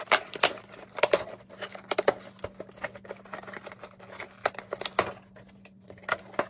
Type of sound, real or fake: real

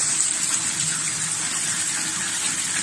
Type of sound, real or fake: real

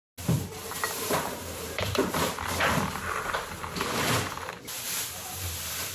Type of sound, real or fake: real